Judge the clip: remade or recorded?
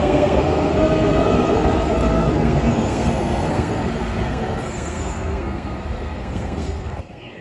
remade